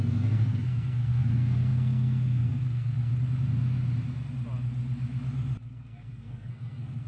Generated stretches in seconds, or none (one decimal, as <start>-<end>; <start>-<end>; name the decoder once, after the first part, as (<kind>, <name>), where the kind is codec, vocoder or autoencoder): 0.0-3.1 (codec, SNAC); 5.6-7.1